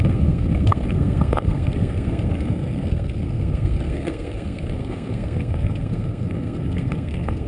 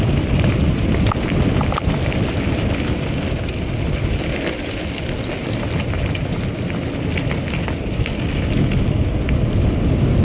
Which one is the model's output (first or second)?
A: first